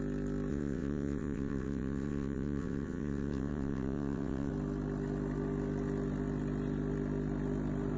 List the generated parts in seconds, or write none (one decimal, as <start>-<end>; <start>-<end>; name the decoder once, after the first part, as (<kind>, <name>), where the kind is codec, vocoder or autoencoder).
0.5-4.5 (vocoder, WaveNeXt)